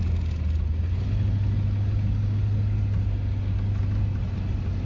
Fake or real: real